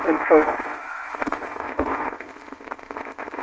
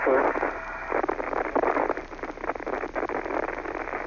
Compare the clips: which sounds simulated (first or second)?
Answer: first